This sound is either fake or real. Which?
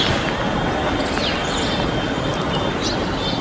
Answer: real